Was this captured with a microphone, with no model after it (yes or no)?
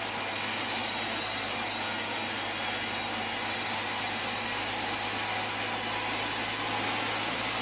yes